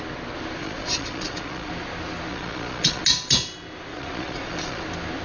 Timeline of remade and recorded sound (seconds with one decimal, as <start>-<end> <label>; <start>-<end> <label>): 0.0-0.6 recorded; 0.6-1.7 remade; 1.7-2.3 recorded; 2.3-3.0 remade; 3.0-3.9 recorded; 3.9-4.8 remade; 4.8-5.2 recorded